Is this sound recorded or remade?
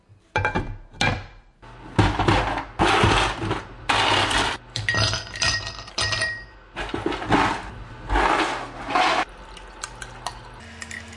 recorded